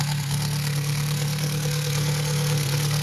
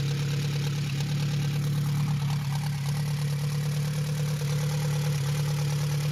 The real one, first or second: second